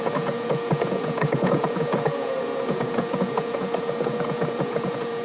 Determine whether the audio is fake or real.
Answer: fake